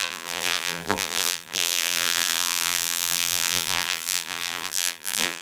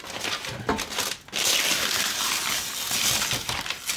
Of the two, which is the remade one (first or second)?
first